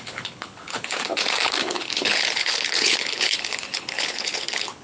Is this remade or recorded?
remade